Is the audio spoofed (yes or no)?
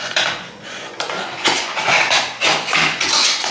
yes